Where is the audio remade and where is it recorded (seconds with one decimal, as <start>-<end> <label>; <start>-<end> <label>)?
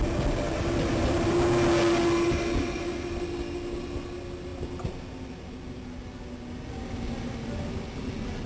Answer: 0.0-8.5 recorded